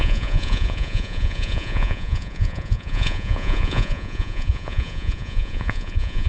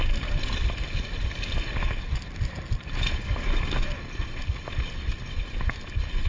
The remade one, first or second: first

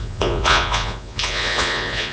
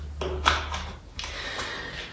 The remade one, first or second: first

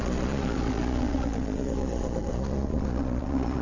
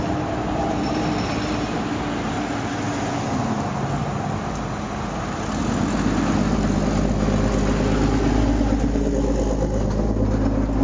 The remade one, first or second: first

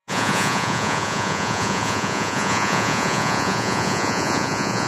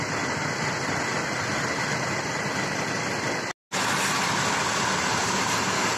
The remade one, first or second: first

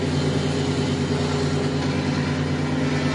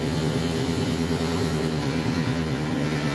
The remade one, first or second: second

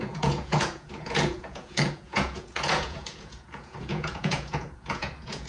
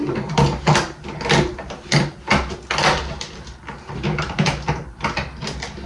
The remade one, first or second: first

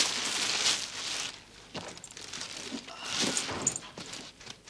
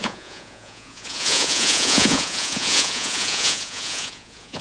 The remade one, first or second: second